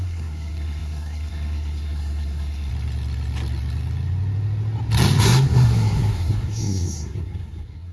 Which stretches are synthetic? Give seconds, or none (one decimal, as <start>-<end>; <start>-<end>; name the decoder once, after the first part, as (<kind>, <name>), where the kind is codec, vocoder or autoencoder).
0.0-2.7 (codec, SNAC); 5.2-7.9